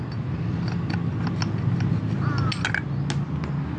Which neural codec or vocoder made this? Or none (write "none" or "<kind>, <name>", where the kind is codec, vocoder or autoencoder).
none